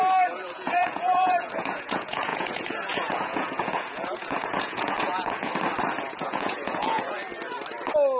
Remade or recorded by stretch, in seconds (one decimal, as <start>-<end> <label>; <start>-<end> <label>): 0.0-5.5 remade; 5.5-6.0 recorded; 6.0-7.2 remade; 7.2-8.2 recorded